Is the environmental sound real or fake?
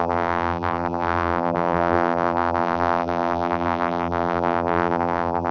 fake